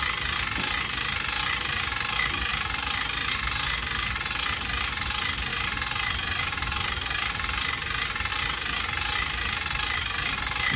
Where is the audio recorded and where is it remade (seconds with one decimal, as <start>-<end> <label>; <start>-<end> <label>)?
0.0-10.8 recorded